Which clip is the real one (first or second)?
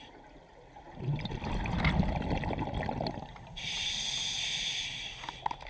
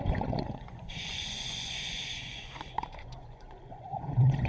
first